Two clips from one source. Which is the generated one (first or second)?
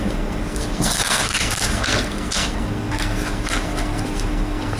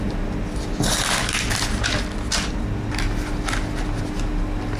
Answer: first